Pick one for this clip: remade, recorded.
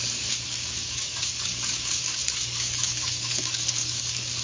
remade